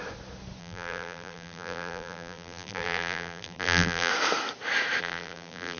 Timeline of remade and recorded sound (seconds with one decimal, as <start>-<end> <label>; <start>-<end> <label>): 0.0-0.6 recorded; 0.6-4.1 remade; 4.1-5.0 recorded; 5.0-5.8 remade